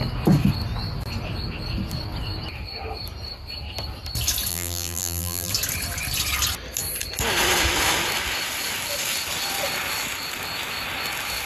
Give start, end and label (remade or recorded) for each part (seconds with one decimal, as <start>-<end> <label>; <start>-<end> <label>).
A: 0.0-4.5 recorded; 4.5-5.5 remade; 5.5-11.5 recorded